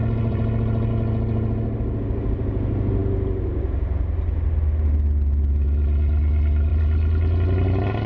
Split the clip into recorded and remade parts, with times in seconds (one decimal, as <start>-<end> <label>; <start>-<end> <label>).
0.0-0.9 remade; 0.9-8.1 recorded